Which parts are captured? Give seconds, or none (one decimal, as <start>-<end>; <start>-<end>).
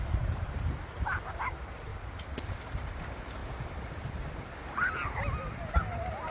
1.9-2.5; 3.4-6.3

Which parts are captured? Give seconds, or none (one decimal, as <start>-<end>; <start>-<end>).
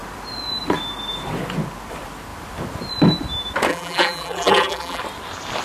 0.0-3.7; 5.0-5.6